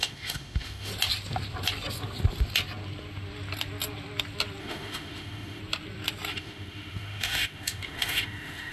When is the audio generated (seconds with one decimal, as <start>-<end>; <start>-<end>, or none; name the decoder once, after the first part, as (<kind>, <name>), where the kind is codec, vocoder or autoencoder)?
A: 0.0-0.9 (autoencoder, DAC-VAE); 4.6-5.6; 6.3-8.7